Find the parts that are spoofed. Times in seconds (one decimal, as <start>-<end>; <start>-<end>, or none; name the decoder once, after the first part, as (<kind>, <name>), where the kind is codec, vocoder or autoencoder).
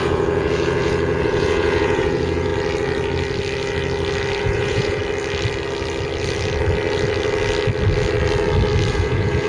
0.0-2.5 (vocoder, Vocos); 4.4-5.0; 8.9-9.5